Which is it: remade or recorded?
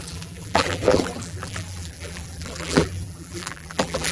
remade